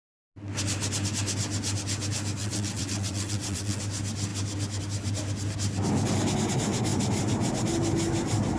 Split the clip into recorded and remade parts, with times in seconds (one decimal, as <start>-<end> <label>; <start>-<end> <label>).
0.0-2.4 recorded; 2.4-3.8 remade; 3.8-8.6 recorded